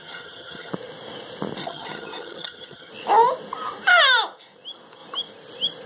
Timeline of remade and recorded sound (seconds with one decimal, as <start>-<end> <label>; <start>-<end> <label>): 0.0-0.7 remade; 0.7-1.6 recorded; 1.6-2.9 remade; 2.9-5.9 recorded